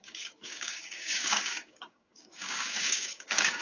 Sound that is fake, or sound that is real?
fake